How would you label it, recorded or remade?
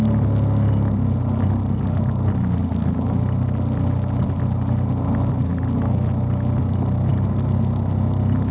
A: recorded